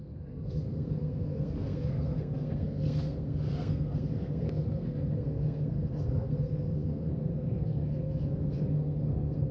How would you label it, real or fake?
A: fake